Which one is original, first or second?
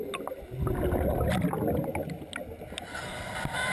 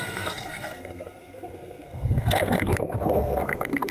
first